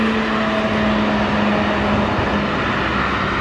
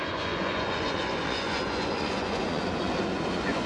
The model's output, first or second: second